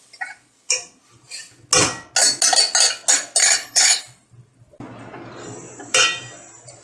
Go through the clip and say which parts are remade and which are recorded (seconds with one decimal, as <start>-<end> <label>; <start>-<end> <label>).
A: 0.0-3.4 recorded; 3.4-4.0 remade; 4.0-6.8 recorded